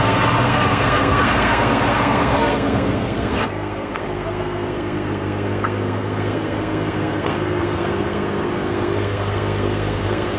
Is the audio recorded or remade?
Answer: remade